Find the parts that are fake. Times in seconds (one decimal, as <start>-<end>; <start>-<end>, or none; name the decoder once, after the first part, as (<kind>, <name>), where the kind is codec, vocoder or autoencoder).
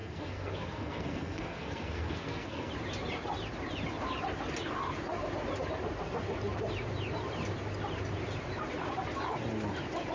0.0-2.7 (codec, SNAC)